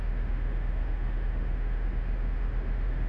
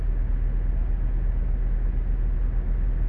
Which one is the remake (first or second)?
first